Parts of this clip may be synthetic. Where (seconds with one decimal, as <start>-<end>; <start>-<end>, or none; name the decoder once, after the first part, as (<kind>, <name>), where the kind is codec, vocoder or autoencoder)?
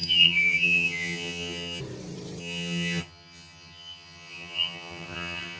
0.0-1.8 (vocoder, HiFi-GAN); 2.4-5.6